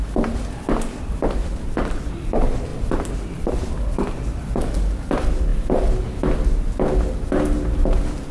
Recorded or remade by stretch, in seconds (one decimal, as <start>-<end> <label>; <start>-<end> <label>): 0.0-8.3 recorded